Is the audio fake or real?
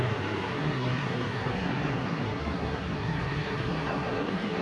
fake